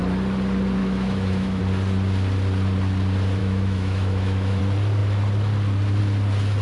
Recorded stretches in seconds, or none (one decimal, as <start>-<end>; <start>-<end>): 0.0-0.8; 1.6-3.4; 4.6-6.6